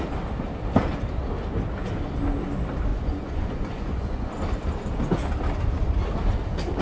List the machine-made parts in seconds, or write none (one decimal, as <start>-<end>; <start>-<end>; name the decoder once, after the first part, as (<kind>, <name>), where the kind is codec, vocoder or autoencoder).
2.9-4.4 (vocoder, Vocos)